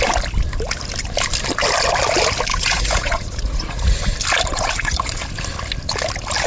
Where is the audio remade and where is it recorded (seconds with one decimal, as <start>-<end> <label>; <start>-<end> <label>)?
0.0-2.5 recorded; 2.5-4.1 remade; 4.1-4.5 recorded; 4.5-5.2 remade; 5.2-6.5 recorded